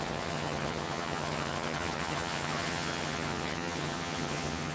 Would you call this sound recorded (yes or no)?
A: no